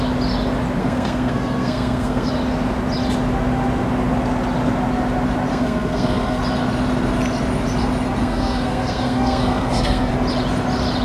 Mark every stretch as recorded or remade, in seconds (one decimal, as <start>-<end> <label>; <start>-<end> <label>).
0.0-0.8 recorded; 0.8-2.3 remade; 2.3-5.5 recorded; 5.5-6.4 remade; 6.4-8.2 recorded; 8.2-10.1 remade; 10.1-11.0 recorded